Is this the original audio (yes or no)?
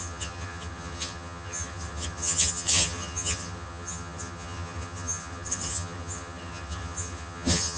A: no